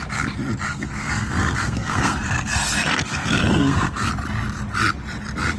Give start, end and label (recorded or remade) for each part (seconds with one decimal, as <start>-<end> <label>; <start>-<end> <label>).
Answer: 0.0-0.7 recorded; 0.7-4.1 remade; 4.1-5.6 recorded